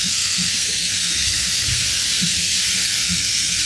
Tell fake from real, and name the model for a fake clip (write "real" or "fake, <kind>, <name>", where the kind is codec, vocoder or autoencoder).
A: fake, codec, SNAC